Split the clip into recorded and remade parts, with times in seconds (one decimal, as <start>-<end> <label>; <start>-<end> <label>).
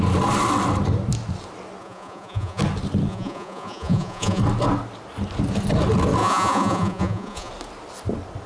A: 0.0-1.8 recorded; 1.8-2.6 remade; 2.6-3.1 recorded; 3.1-4.4 remade; 4.4-6.2 recorded; 6.2-7.5 remade; 7.5-8.5 recorded